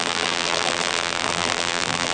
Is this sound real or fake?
fake